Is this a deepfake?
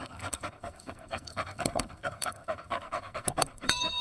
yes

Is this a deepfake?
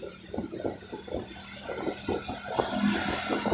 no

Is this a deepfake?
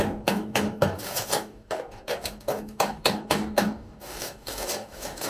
yes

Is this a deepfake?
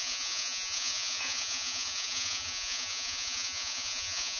yes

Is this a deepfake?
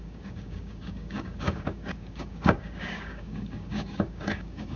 yes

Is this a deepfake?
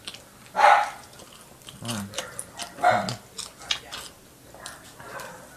no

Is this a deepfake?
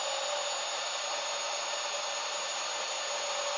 no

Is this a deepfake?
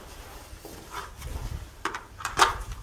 yes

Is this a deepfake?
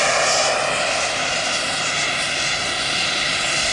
no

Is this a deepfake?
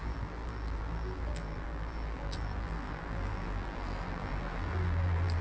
yes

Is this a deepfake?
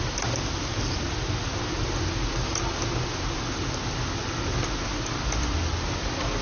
no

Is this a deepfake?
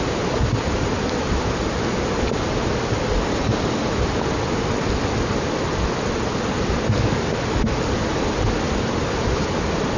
no